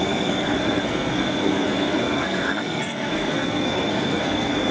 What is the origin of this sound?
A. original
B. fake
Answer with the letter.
B